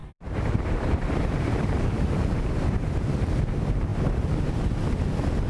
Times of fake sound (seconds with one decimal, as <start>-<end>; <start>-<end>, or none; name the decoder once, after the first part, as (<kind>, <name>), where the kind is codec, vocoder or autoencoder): 0.0-3.3 (vocoder, BigVGAN v2)